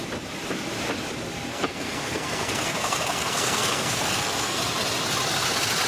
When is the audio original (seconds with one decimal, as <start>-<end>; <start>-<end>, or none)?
0.0-1.5; 4.6-5.9